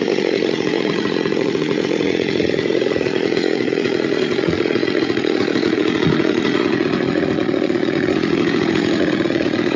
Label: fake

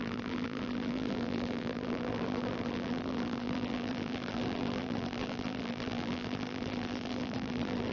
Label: fake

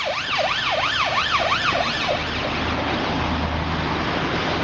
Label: real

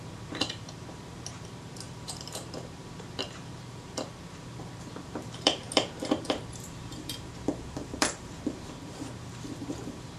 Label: fake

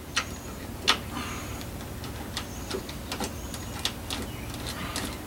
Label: real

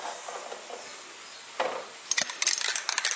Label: real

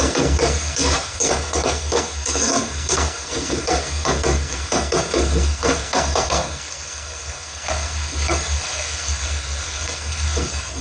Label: fake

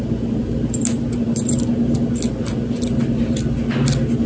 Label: real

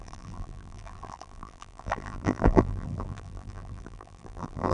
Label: fake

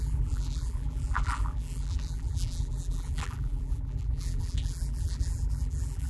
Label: fake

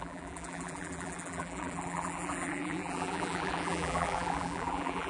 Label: fake